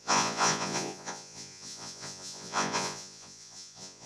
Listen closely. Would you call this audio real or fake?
fake